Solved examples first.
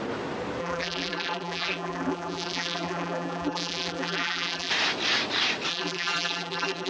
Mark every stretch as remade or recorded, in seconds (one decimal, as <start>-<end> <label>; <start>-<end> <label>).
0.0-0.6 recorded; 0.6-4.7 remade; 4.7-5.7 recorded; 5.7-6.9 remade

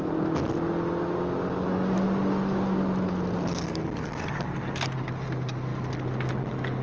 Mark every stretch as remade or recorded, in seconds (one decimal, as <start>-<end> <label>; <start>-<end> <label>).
0.0-6.8 recorded

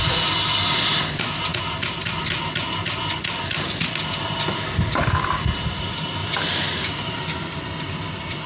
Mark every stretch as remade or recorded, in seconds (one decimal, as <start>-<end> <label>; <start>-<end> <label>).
0.0-6.2 recorded; 6.2-6.9 remade; 6.9-8.5 recorded

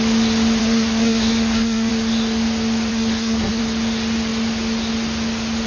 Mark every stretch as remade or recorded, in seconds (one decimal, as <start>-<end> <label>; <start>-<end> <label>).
0.0-0.6 recorded; 0.6-1.9 remade; 1.9-2.9 recorded; 2.9-3.6 remade; 3.6-5.7 recorded

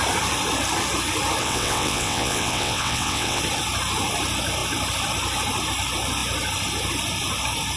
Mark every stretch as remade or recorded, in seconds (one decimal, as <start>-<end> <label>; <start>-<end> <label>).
0.0-1.4 recorded; 1.4-3.4 remade; 3.4-7.8 recorded

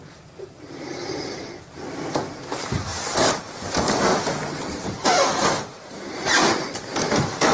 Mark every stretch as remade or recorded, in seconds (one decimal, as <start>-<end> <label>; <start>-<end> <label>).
0.0-2.9 recorded; 2.9-3.8 remade; 3.8-7.5 recorded